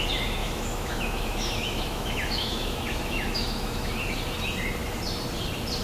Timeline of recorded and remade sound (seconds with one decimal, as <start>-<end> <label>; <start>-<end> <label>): 0.0-0.4 recorded; 0.4-3.9 remade; 3.9-5.8 recorded

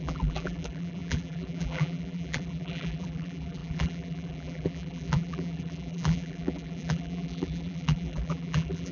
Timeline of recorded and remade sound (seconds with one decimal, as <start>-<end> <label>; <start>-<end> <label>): 0.0-8.9 remade

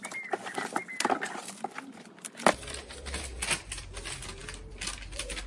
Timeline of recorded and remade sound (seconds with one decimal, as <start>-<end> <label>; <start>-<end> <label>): 0.0-5.5 recorded

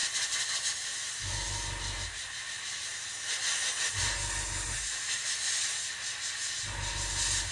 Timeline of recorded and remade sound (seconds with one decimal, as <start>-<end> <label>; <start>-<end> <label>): 0.0-7.5 recorded

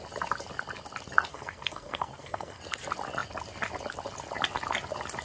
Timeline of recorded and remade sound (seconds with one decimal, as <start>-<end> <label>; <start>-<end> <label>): 0.0-1.3 recorded; 1.3-2.6 remade; 2.6-5.2 recorded

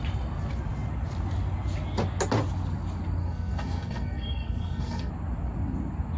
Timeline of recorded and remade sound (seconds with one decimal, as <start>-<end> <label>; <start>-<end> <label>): 0.0-3.2 recorded; 3.2-5.1 remade; 5.1-6.2 recorded

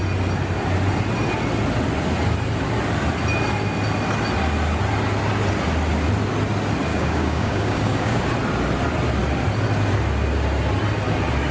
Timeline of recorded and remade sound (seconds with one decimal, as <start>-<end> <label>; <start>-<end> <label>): 0.0-6.9 recorded; 6.9-8.2 remade; 8.2-11.5 recorded